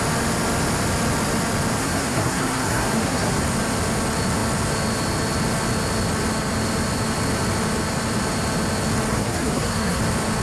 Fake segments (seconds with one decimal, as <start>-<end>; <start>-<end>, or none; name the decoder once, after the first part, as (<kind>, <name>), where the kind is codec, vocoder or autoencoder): 1.8-3.4 (codec, SNAC); 9.1-10.0